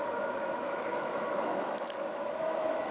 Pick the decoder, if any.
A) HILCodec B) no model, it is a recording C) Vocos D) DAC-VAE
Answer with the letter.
D